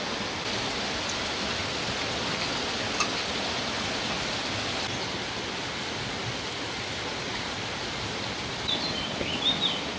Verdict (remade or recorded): recorded